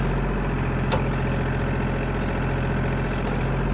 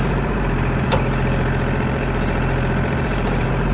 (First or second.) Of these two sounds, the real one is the first